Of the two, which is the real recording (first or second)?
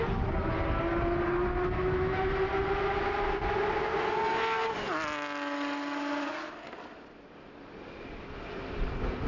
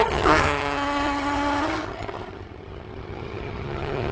first